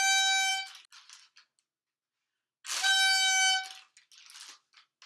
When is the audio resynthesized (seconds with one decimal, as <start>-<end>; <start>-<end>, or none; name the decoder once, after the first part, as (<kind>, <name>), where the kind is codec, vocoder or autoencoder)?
none